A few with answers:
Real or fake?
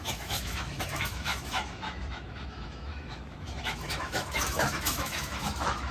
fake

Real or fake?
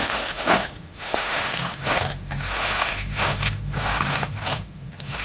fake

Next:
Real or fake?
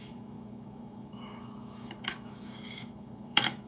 fake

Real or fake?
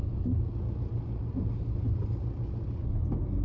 real